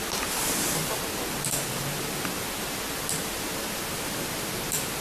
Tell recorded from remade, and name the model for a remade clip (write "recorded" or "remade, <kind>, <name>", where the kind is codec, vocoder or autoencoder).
recorded